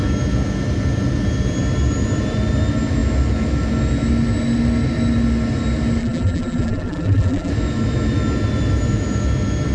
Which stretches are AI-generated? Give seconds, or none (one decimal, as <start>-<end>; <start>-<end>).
6.0-7.5